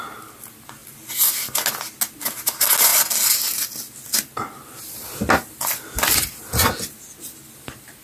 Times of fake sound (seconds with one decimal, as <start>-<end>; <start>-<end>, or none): none